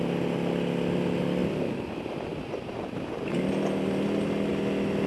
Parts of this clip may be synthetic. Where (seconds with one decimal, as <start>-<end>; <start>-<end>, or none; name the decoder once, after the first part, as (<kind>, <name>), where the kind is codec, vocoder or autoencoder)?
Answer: none